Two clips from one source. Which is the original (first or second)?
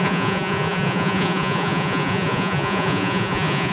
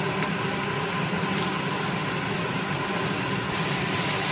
second